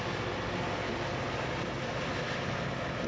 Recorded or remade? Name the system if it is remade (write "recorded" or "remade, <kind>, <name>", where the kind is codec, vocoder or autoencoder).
recorded